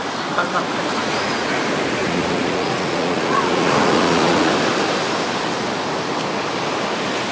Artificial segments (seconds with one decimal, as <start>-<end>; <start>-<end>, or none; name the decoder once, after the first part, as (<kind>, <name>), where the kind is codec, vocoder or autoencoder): 1.0-1.5 (vocoder, Vocos); 2.0-4.5